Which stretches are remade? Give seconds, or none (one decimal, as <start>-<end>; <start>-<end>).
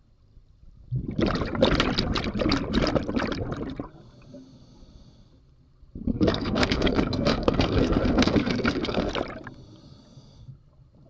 6.1-9.1